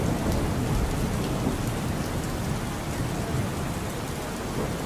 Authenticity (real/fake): real